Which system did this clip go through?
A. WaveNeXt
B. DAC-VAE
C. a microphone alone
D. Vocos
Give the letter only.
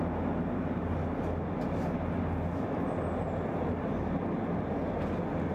C